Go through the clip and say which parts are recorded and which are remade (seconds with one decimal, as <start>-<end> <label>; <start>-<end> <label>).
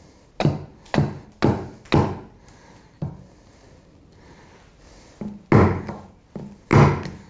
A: 0.0-7.3 recorded